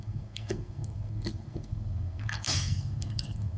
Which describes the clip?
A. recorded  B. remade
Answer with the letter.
B